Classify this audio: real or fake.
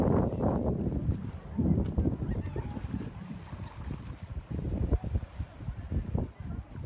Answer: real